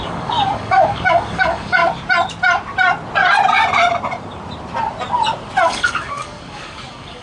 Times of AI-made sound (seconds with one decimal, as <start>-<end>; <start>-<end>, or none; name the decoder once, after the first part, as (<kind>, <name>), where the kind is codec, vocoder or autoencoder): 0.0-1.8 (codec, DAC); 5.6-7.2